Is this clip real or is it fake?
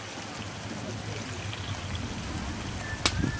real